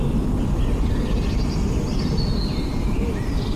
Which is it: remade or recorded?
recorded